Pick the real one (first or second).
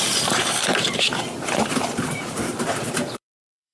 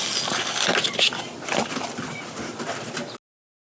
second